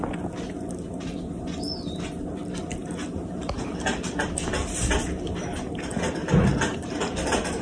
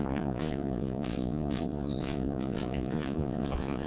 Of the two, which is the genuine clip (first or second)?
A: first